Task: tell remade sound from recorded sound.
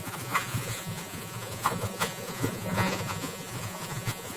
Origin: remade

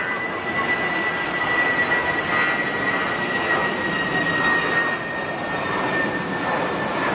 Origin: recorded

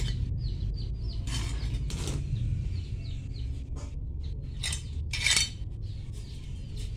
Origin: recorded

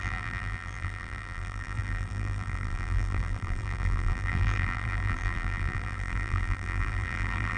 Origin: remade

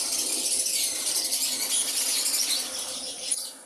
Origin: recorded